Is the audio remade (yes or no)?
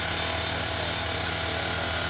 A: no